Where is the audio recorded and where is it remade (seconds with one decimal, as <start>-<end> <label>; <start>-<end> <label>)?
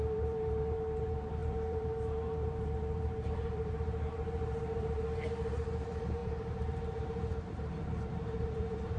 0.0-9.0 remade